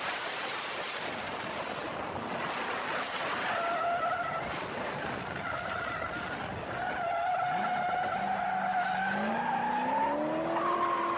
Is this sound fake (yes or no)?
no